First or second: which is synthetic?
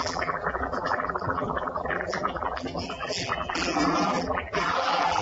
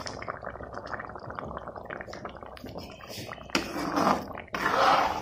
first